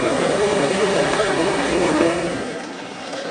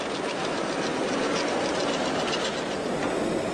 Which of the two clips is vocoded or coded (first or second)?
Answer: first